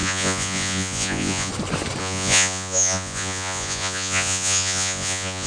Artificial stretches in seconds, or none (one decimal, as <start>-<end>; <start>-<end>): 0.0-1.5; 2.0-5.5